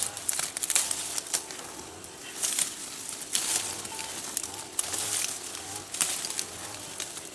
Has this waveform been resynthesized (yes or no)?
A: no